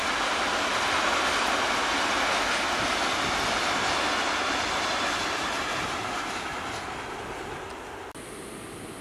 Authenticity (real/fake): real